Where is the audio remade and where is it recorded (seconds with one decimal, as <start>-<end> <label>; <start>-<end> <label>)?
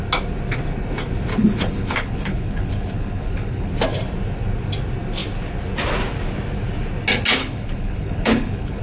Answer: 0.0-1.3 recorded; 1.3-3.7 remade; 3.7-7.4 recorded; 7.4-8.8 remade